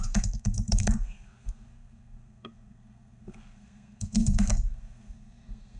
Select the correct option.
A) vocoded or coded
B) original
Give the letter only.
A